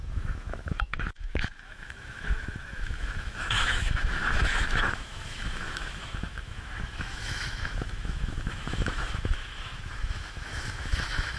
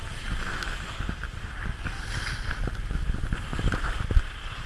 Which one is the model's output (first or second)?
first